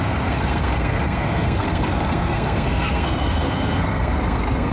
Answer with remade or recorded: remade